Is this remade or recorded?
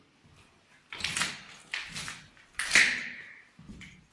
recorded